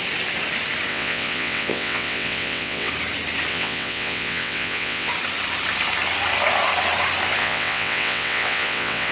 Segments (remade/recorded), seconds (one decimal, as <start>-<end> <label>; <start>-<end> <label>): 0.0-0.9 recorded; 0.9-2.9 remade; 2.9-3.5 recorded; 3.5-5.1 remade; 5.1-7.4 recorded; 7.4-9.1 remade